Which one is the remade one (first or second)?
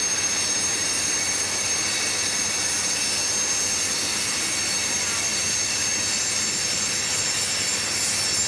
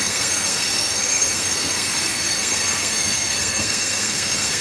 second